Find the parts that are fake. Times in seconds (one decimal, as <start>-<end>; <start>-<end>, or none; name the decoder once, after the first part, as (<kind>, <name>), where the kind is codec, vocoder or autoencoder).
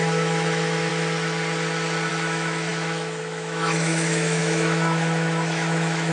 0.0-0.9 (autoencoder, DAC-VAE); 2.1-6.1